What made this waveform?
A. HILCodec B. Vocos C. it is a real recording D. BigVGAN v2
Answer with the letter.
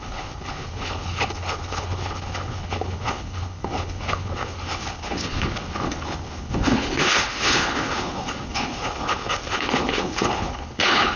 A